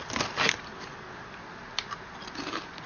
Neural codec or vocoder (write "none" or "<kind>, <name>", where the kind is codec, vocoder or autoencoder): none